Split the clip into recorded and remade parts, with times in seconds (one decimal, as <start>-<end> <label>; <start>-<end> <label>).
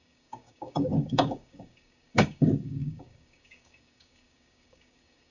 0.0-5.3 remade